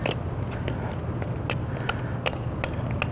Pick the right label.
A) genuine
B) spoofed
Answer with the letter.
A